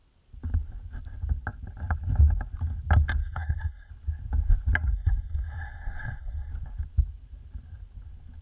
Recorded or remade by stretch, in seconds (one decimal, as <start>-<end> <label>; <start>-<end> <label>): 0.0-3.2 recorded; 3.2-3.9 remade; 3.9-4.9 recorded; 4.9-6.5 remade; 6.5-8.4 recorded